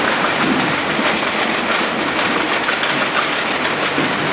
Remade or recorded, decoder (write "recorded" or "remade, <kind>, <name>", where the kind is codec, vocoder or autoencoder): recorded